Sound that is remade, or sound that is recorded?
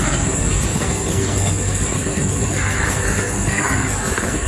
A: remade